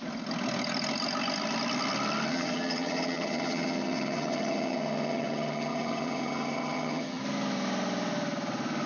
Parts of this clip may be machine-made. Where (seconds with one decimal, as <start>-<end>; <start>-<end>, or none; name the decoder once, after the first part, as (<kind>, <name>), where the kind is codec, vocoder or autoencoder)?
2.3-7.2 (vocoder, HiFi-GAN)